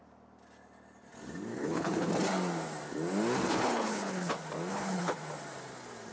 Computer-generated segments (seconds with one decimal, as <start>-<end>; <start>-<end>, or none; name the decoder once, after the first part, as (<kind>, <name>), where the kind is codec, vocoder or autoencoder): 1.5-2.1 (codec, HILCodec); 3.5-4.3; 4.7-5.2